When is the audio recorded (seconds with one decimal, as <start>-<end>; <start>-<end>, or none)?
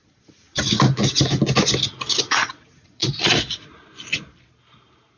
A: 0.6-2.4; 3.7-5.2